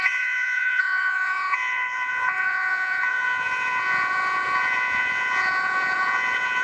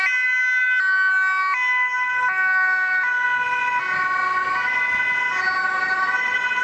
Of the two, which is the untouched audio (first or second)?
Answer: second